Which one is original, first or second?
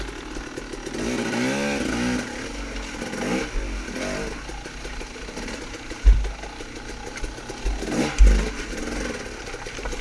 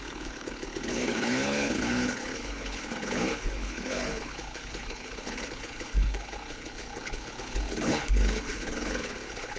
first